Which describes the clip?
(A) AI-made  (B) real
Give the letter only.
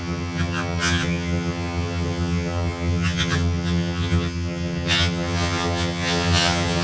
A